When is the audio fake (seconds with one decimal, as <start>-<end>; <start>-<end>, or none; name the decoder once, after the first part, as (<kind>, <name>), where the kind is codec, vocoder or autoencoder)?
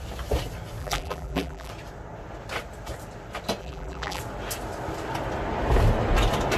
0.8-1.7 (vocoder, BigVGAN v2); 3.6-4.2